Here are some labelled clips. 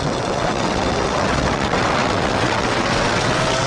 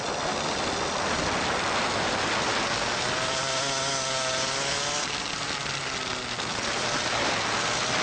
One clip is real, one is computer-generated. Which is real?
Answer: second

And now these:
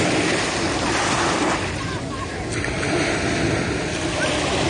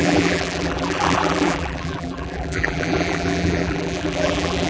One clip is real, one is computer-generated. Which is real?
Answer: first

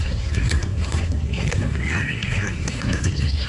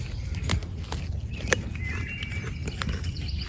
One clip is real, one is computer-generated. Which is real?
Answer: second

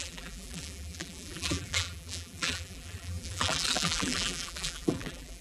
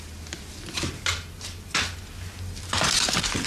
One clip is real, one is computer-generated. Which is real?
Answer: second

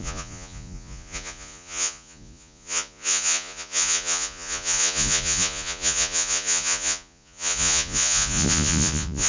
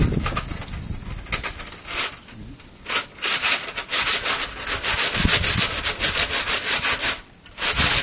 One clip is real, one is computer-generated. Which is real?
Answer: second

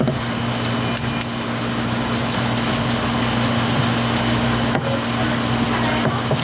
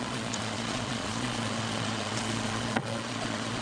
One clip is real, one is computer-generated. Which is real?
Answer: first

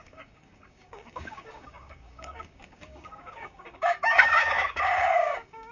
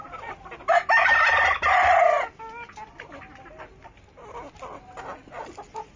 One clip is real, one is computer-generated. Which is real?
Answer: second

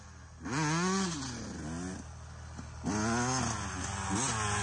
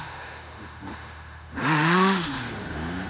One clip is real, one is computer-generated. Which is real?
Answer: first